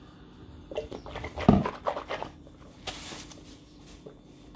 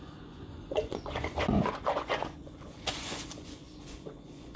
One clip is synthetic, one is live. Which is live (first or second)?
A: first